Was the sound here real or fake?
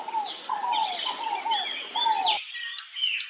real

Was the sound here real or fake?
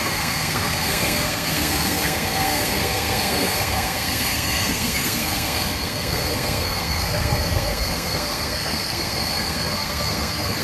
fake